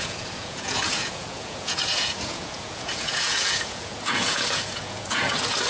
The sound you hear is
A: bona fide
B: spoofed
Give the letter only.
B